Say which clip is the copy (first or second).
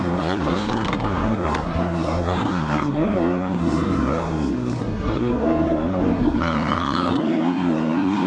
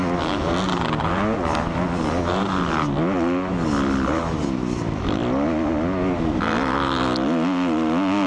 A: first